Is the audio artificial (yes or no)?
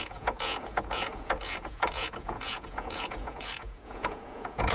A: yes